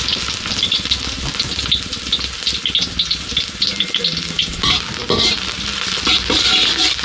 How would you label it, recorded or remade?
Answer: recorded